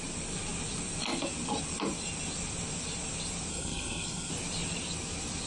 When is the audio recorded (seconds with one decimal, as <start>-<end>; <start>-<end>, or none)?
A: 0.0-3.5; 4.3-5.5